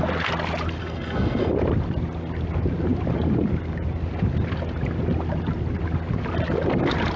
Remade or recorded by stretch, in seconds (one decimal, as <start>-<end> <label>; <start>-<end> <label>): 0.0-0.8 recorded; 0.8-1.5 remade; 1.5-7.2 recorded